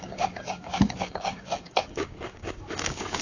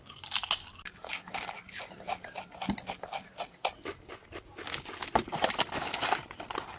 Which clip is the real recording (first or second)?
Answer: second